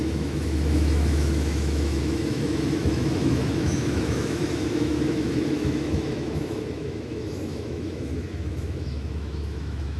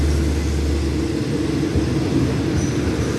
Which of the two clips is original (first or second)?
second